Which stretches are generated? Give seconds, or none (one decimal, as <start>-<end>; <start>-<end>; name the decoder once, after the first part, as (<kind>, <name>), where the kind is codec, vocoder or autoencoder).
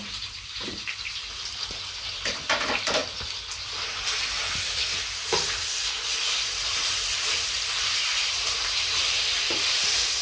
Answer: 0.0-3.0 (vocoder, BigVGAN v2); 3.6-4.4; 6.2-10.2